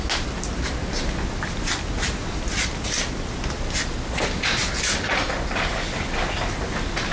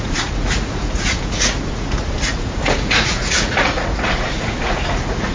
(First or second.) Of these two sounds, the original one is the first